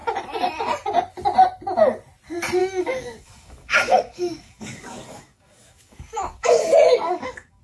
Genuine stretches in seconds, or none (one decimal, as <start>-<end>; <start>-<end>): 0.0-2.6